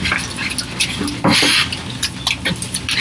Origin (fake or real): real